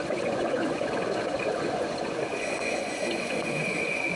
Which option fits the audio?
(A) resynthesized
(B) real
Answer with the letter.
A